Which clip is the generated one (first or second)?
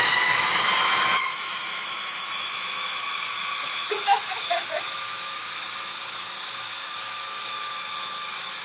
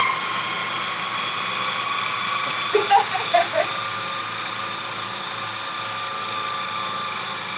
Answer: first